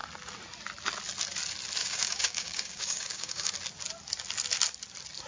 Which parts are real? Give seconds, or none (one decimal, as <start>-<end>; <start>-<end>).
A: 0.0-1.8; 3.5-5.3

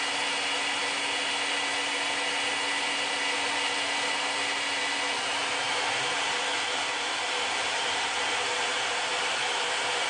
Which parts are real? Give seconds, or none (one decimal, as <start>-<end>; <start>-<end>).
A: 0.0-10.1

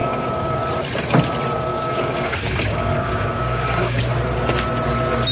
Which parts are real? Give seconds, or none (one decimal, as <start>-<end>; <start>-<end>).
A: 0.6-1.7; 4.0-5.3

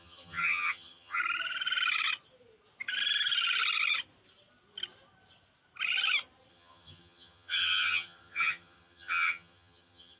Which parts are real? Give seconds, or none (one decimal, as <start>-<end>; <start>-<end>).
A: 1.2-6.5

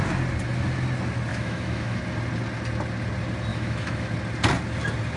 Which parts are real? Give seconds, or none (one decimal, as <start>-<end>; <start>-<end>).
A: 0.0-1.3; 2.0-3.5; 4.1-5.2

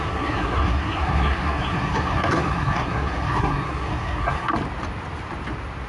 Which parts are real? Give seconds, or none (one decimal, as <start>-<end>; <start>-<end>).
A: 4.5-5.9

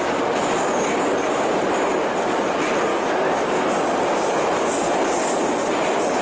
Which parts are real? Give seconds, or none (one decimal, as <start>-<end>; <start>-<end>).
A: 2.9-6.2